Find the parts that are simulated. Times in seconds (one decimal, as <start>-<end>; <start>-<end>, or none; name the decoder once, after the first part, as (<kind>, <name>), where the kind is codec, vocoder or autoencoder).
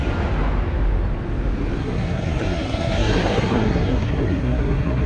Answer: 1.8-5.1 (codec, SNAC)